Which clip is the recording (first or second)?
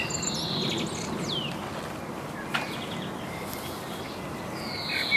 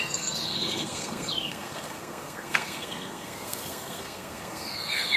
first